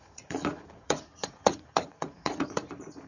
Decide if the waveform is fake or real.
fake